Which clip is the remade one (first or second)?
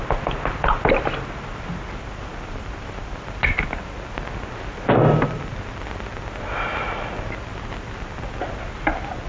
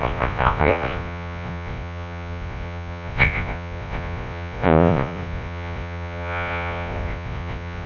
second